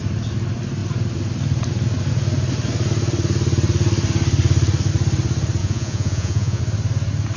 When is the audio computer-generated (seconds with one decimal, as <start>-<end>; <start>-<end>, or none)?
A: 5.6-6.6